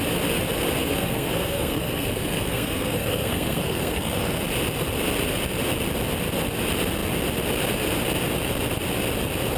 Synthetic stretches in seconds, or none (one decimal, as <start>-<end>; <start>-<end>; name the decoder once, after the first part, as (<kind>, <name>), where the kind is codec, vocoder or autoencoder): 0.8-4.4 (codec, SNAC)

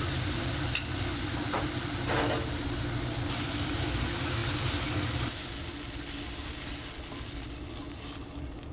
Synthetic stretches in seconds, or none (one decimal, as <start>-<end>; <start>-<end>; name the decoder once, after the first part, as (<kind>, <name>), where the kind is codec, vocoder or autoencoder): none